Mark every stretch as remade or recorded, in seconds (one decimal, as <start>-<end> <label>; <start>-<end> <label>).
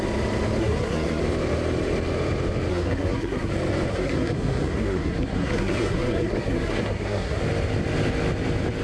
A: 0.0-0.6 recorded; 0.6-1.2 remade; 1.2-2.7 recorded; 2.7-3.5 remade; 3.5-3.9 recorded; 3.9-7.4 remade; 7.4-8.8 recorded